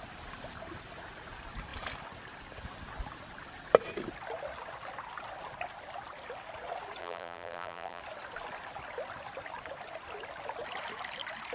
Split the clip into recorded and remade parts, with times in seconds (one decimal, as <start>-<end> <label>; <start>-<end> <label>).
0.0-7.0 recorded; 7.0-8.0 remade; 8.0-11.5 recorded